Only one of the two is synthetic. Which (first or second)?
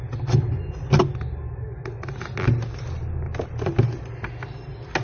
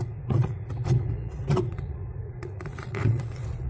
second